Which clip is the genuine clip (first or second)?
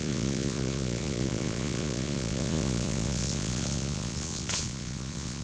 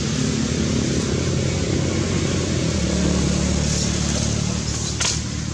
second